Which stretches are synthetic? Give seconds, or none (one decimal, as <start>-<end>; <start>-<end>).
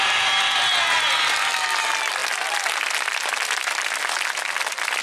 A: none